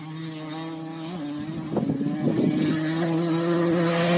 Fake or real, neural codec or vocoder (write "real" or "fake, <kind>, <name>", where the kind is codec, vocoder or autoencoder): real